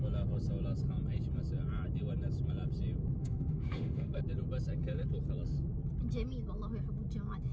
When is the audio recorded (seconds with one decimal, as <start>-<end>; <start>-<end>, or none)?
0.0-3.2; 4.2-7.5